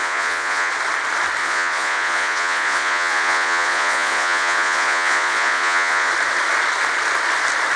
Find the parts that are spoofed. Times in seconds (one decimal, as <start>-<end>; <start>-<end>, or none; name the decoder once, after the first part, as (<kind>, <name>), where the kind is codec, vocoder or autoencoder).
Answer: 0.0-0.7 (vocoder, Vocos); 1.4-6.1